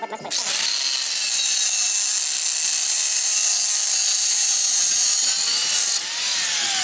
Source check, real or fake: real